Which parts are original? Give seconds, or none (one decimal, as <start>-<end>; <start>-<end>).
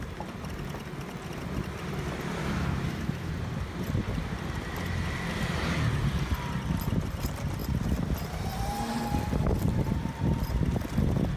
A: 0.0-2.4; 3.3-11.4